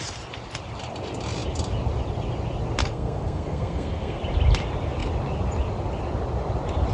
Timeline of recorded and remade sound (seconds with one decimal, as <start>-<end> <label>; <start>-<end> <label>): 0.0-2.8 recorded; 2.8-4.2 remade; 4.2-6.9 recorded